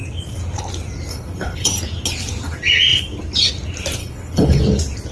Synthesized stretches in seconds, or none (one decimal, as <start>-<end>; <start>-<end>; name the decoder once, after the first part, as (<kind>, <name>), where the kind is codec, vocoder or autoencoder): 1.1-1.7 (codec, HILCodec); 4.0-4.6